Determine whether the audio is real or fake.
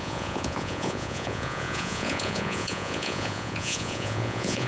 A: fake